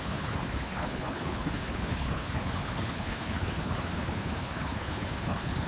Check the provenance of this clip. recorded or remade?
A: remade